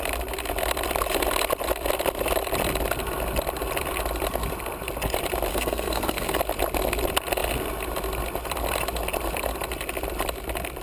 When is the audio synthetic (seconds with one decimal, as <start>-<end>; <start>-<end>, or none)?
5.5-6.4